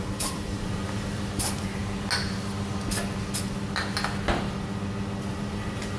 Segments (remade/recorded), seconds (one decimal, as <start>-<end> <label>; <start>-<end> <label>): 0.0-1.8 remade; 1.8-5.3 recorded; 5.3-6.0 remade